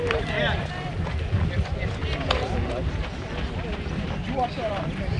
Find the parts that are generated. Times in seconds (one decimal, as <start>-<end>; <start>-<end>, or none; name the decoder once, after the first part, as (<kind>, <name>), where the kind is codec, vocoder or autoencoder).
0.0-0.9 (vocoder, BigVGAN v2); 3.6-5.2